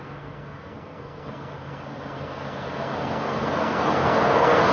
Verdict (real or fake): fake